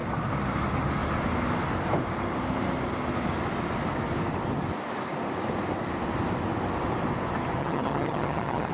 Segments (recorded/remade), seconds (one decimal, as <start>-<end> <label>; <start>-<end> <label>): 0.0-7.6 recorded; 7.6-8.7 remade